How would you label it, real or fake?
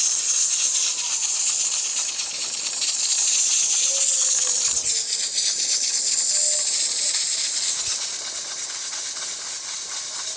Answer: real